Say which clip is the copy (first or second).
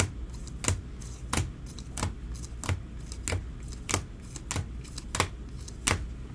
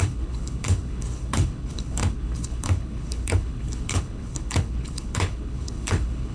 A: second